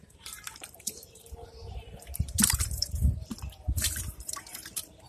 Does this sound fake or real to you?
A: fake